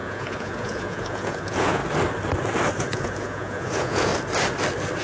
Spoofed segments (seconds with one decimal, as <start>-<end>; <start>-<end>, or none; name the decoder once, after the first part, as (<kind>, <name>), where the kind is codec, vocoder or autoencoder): 0.0-1.8 (vocoder, Vocos); 2.8-4.1